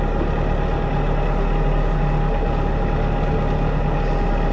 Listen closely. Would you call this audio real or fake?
real